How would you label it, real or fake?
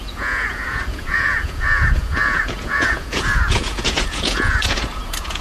fake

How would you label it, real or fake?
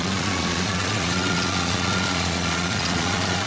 fake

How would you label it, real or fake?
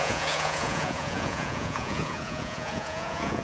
fake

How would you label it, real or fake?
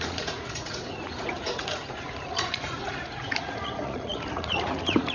fake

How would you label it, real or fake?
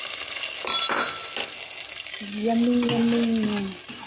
real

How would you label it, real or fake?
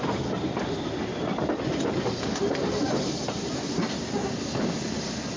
real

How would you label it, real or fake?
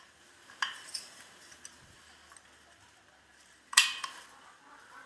real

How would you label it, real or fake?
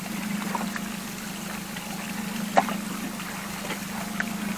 real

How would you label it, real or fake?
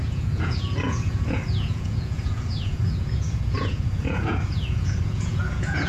fake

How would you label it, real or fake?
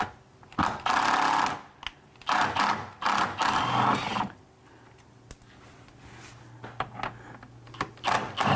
real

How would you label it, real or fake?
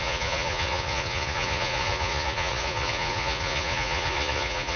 fake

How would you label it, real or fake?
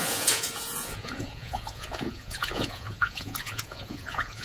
fake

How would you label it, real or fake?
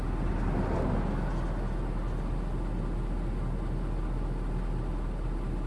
real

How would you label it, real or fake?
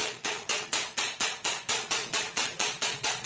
fake